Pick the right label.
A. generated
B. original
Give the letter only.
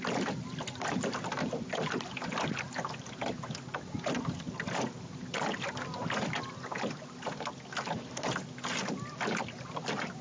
B